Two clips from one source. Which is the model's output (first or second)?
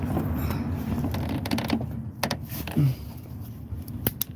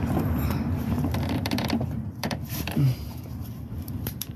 second